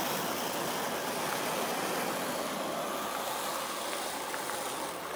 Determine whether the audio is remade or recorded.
recorded